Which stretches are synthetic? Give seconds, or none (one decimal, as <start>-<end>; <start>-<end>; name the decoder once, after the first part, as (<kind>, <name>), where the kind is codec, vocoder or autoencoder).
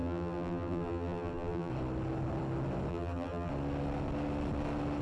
0.0-1.7 (vocoder, BigVGAN v2); 2.9-3.5